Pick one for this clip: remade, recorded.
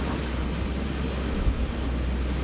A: recorded